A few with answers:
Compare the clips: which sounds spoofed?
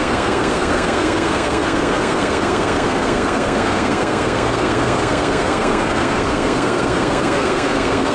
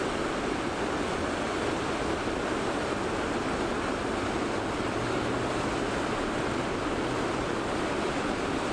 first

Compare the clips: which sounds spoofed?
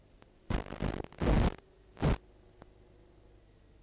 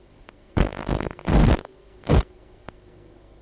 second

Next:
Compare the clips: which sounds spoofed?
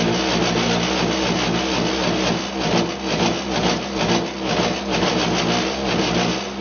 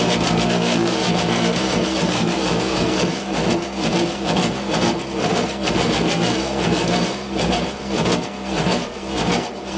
second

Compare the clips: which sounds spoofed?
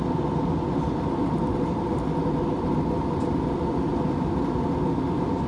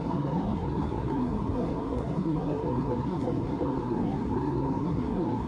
second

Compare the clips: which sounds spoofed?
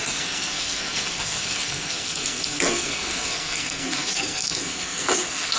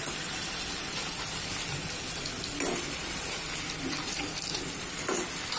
first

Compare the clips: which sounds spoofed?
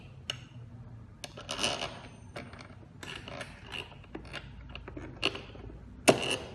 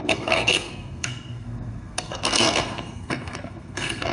second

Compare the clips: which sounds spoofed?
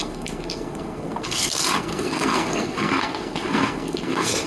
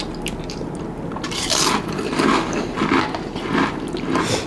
first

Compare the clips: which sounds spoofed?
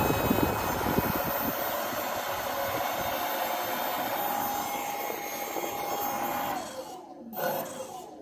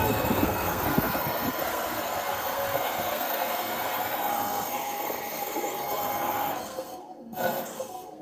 second